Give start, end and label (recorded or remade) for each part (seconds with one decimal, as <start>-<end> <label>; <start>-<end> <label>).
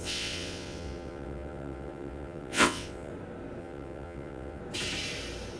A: 0.0-3.1 remade; 3.1-3.6 recorded; 3.6-4.6 remade; 4.6-5.6 recorded